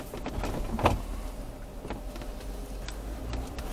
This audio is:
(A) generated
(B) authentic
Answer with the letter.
B